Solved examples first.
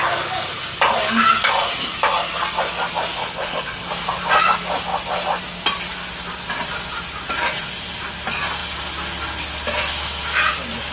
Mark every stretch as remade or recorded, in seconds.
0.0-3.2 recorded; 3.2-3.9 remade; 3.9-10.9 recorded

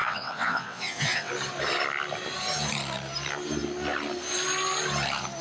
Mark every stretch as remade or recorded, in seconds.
0.0-1.3 remade; 1.3-5.4 recorded

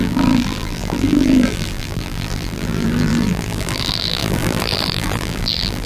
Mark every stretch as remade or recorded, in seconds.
0.0-5.9 remade

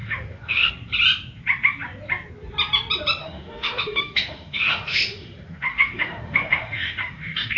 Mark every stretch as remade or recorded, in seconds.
0.0-0.7 remade; 0.7-3.2 recorded; 3.2-7.6 remade

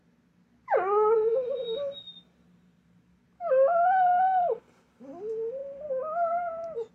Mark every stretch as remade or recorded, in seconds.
0.0-6.9 recorded

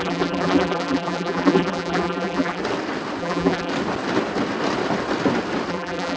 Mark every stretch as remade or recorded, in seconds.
0.0-2.6 remade; 2.6-3.2 recorded; 3.2-3.7 remade; 3.7-5.7 recorded; 5.7-6.2 remade